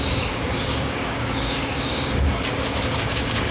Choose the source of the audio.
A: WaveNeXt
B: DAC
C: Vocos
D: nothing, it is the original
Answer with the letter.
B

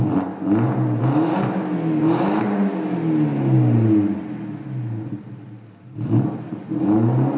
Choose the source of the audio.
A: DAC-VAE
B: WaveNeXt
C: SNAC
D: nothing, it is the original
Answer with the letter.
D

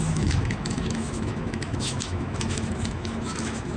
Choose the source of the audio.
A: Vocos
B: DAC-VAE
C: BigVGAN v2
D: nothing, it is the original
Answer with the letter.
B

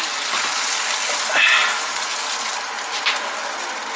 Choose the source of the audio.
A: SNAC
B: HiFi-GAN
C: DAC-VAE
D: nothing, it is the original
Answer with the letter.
D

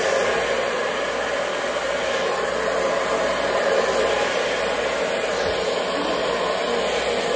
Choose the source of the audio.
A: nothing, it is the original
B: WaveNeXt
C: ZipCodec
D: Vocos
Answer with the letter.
A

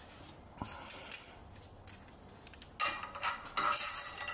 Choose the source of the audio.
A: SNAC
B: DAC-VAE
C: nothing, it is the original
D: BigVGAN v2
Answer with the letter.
C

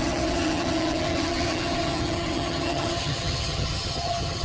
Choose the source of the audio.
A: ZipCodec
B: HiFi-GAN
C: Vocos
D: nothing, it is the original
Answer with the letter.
B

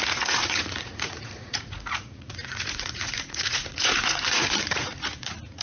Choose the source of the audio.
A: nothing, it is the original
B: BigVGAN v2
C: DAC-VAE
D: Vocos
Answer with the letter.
D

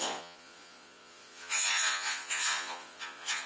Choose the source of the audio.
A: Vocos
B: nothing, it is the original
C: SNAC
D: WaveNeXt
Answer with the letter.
A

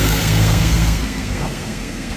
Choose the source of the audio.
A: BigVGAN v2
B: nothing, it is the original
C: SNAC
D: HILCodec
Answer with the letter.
C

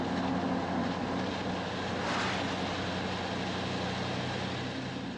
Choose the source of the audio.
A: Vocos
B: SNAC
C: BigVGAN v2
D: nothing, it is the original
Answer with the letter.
D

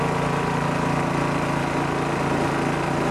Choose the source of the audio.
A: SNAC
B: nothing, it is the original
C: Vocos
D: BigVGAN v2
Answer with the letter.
B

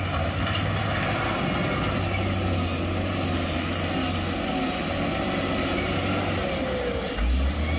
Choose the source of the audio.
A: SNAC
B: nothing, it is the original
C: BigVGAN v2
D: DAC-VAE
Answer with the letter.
B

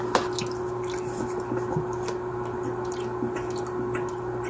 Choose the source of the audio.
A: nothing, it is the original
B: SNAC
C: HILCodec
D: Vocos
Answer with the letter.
A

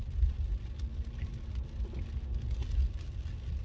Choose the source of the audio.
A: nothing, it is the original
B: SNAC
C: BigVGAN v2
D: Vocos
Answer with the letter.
A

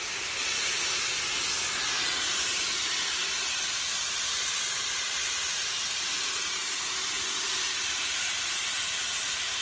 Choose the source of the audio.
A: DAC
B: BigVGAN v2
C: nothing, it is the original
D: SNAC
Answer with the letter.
C